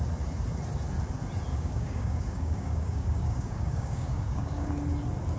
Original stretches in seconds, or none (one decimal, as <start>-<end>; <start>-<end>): 0.0-1.5; 4.7-5.4